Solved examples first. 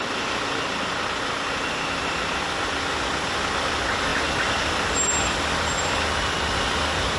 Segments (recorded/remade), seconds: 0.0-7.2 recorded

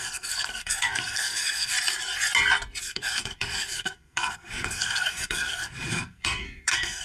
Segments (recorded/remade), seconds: 0.0-1.7 remade; 1.7-2.8 recorded; 2.8-7.0 remade

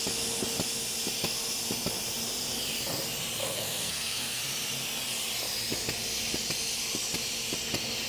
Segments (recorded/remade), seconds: 0.0-3.4 recorded; 3.4-4.4 remade; 4.4-8.1 recorded